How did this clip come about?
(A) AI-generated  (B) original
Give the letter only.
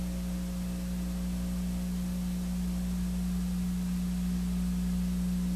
B